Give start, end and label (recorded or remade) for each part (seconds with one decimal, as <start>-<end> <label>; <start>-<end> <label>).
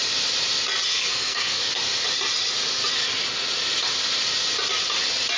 0.0-0.9 recorded; 0.9-1.6 remade; 1.6-5.4 recorded